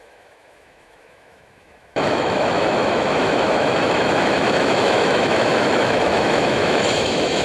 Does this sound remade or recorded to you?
remade